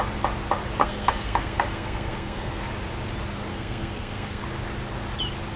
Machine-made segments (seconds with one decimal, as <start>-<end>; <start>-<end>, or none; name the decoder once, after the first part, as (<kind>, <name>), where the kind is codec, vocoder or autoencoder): 0.8-2.6 (codec, SNAC); 3.5-4.4